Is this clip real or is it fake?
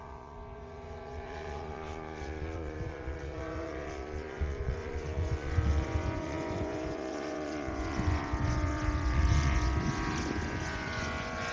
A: fake